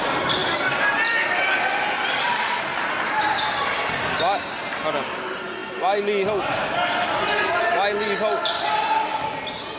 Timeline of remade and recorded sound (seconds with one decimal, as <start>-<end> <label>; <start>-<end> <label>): 0.0-2.7 recorded; 2.7-4.1 remade; 4.1-9.8 recorded